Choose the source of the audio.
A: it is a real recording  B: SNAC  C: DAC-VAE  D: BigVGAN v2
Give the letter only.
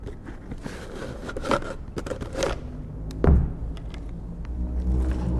A